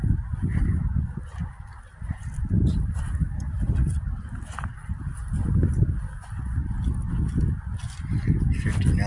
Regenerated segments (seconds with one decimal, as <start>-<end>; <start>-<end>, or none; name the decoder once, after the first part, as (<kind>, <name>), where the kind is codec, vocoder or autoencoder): 1.2-5.8 (vocoder, BigVGAN v2)